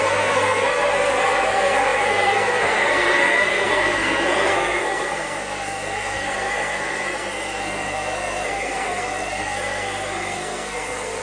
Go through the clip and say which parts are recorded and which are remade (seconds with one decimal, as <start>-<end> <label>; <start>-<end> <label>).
0.0-11.2 remade